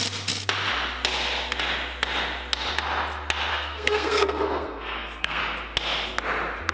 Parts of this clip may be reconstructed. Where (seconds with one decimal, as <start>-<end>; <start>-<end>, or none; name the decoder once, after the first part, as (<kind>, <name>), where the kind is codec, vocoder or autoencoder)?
3.5-5.4 (codec, SNAC)